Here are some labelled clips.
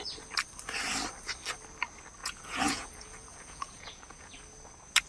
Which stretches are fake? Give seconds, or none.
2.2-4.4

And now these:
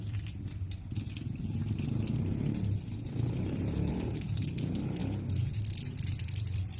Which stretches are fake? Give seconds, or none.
0.0-5.0; 5.9-6.8

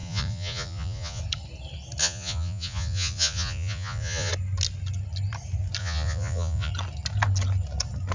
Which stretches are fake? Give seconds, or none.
0.0-1.2; 2.0-4.3; 5.8-6.7

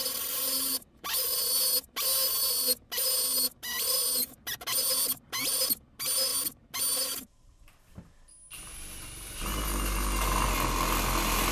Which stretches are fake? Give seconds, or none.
none

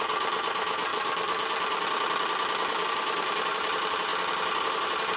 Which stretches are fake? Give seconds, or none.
0.0-0.9; 2.9-4.1; 4.7-5.2

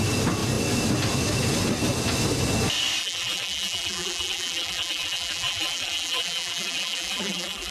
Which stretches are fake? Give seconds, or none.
3.0-7.7